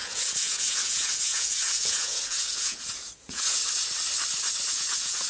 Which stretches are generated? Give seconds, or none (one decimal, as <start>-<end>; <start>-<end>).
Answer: 0.0-3.6; 4.7-5.3